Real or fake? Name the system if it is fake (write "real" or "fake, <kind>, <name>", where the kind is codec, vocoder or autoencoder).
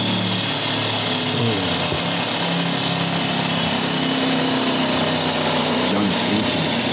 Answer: real